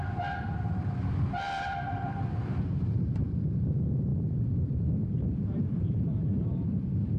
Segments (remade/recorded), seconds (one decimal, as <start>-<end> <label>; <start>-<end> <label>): 0.0-4.1 remade; 4.1-5.0 recorded; 5.0-7.2 remade